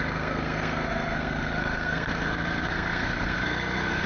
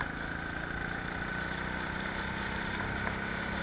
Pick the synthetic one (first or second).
first